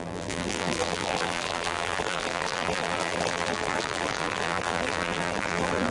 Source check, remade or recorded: remade